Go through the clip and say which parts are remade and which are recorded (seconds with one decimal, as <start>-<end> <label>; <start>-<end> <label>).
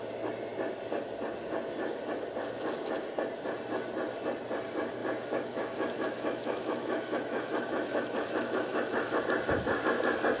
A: 0.0-5.0 recorded; 5.0-9.2 remade; 9.2-10.4 recorded